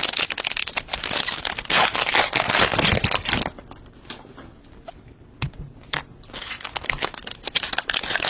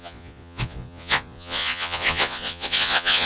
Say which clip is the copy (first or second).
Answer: second